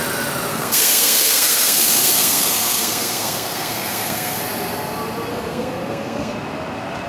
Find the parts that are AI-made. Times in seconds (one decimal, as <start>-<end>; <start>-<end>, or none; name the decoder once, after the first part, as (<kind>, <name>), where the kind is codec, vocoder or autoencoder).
0.5-4.4 (codec, SNAC); 5.3-6.3